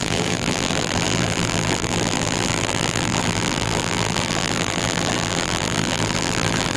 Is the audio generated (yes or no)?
yes